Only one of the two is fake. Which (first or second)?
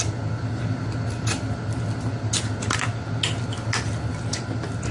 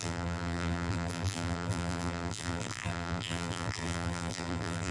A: second